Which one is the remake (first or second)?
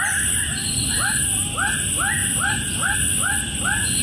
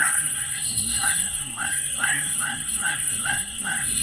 second